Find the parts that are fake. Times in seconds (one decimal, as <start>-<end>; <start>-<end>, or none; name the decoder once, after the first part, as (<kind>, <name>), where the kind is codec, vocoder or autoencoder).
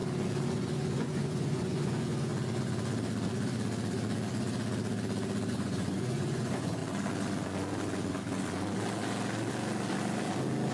0.5-2.3 (vocoder, Vocos); 5.5-6.8